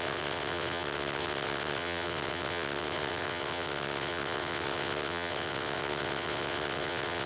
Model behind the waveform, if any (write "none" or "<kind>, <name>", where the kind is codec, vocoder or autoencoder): vocoder, WaveNeXt